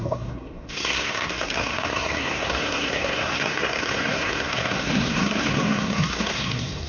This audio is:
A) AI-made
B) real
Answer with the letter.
A